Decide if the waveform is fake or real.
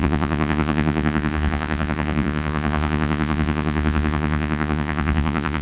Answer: fake